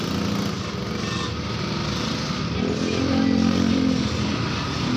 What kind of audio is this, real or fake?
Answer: real